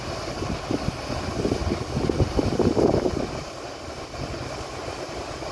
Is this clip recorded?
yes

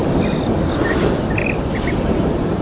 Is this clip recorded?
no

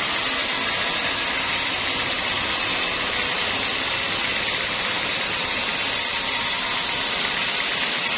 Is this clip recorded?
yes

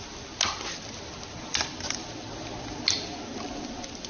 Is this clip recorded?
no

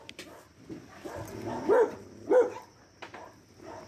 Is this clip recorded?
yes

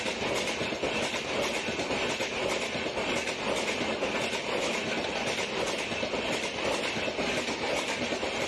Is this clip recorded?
yes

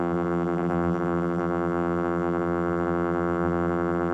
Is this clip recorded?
no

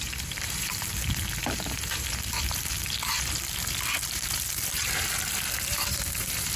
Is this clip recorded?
no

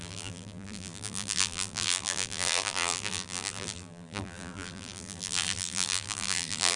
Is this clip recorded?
no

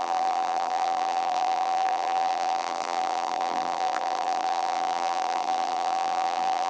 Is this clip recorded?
no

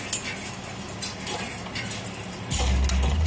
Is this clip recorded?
yes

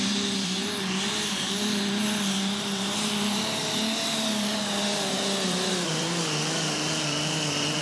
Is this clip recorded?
no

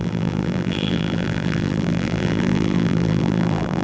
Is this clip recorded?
no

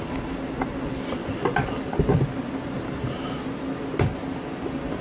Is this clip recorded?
yes